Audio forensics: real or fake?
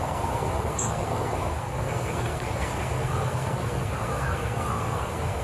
fake